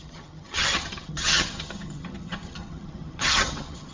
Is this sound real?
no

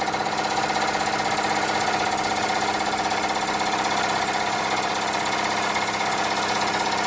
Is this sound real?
yes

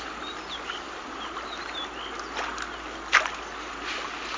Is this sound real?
yes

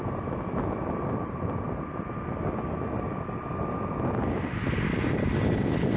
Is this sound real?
yes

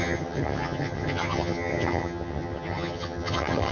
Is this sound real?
no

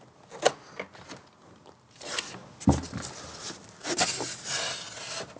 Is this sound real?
yes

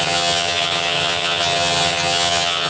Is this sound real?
no